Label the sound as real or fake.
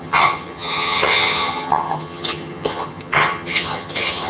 fake